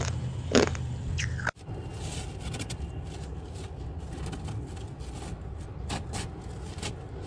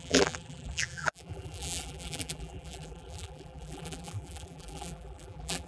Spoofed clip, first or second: second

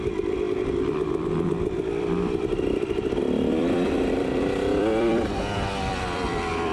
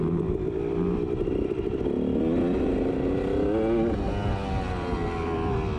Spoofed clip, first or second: first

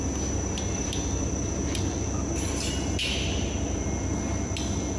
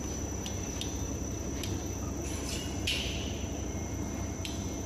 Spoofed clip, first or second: second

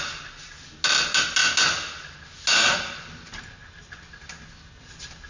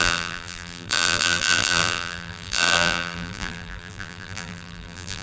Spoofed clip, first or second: second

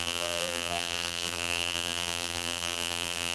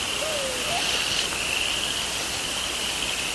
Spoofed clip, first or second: first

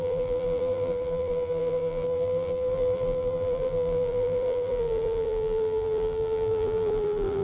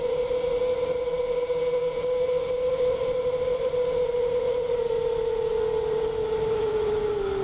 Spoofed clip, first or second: first